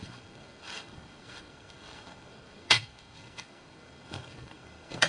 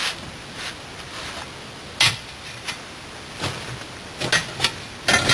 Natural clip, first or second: second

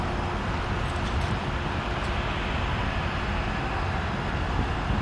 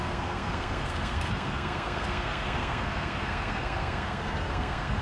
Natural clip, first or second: first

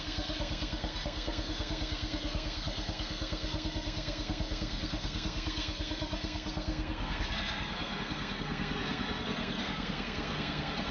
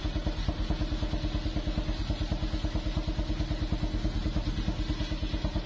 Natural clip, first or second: second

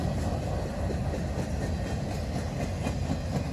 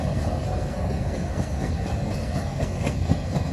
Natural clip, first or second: first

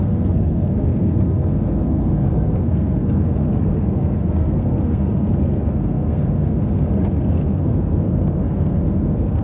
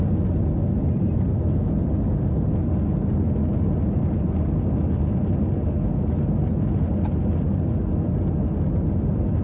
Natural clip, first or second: second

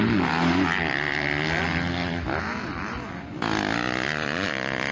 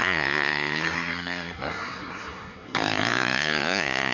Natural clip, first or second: first